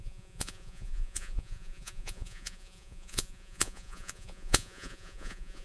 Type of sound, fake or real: fake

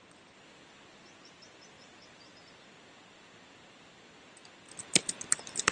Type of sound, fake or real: real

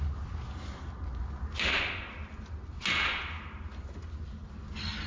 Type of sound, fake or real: real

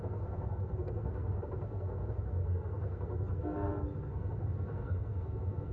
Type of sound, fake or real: fake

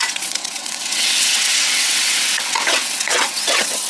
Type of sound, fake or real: fake